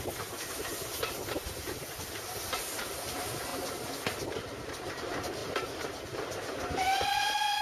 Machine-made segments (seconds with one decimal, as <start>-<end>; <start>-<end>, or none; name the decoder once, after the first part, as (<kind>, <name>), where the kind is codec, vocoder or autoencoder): 0.0-3.5 (vocoder, BigVGAN v2); 4.9-7.6